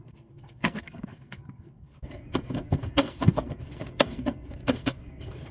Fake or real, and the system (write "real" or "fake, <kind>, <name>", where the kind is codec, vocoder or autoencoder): fake, codec, SNAC